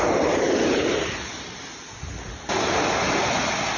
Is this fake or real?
real